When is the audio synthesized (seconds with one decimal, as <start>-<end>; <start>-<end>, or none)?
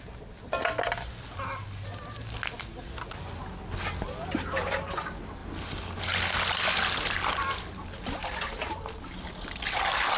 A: none